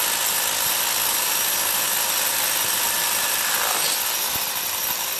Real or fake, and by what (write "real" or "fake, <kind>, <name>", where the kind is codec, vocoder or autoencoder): real